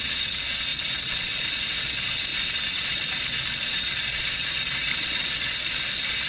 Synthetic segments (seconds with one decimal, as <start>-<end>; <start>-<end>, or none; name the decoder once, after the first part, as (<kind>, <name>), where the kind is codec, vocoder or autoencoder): 0.7-1.5 (vocoder, BigVGAN v2); 2.3-6.3